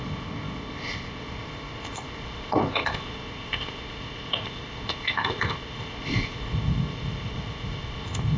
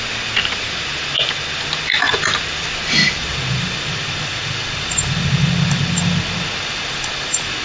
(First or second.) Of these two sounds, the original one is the second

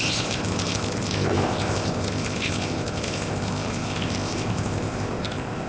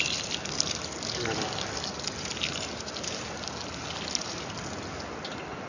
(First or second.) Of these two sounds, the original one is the second